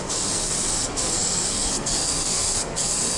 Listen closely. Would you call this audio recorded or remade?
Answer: remade